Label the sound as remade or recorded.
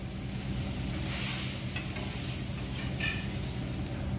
recorded